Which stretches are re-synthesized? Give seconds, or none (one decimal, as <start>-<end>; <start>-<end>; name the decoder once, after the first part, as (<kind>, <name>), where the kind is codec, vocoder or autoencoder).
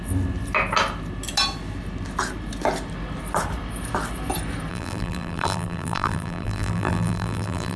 4.7-7.8 (vocoder, BigVGAN v2)